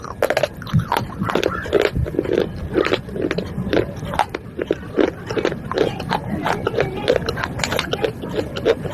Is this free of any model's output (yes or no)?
yes